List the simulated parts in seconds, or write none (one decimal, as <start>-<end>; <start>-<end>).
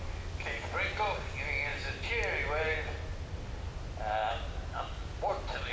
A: none